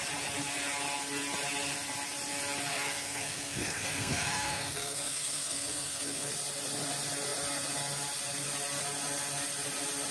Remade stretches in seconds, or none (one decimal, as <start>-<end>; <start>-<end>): 2.7-6.3